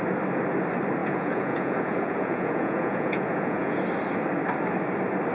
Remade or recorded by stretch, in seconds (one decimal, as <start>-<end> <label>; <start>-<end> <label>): 0.0-1.0 recorded; 1.0-3.8 remade; 3.8-5.3 recorded